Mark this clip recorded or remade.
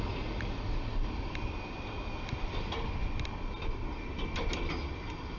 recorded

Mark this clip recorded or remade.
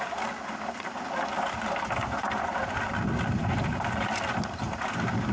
recorded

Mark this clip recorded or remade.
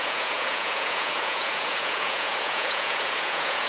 remade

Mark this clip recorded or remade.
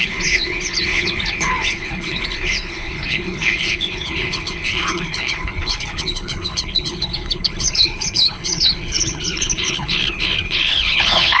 remade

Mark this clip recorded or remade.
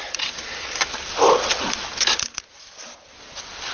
recorded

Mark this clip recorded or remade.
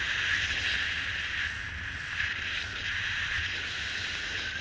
recorded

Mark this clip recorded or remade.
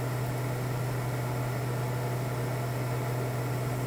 recorded